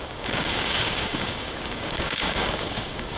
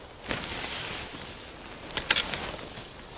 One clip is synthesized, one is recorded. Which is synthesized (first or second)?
first